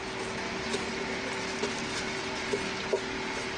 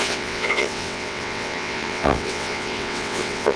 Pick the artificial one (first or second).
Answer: second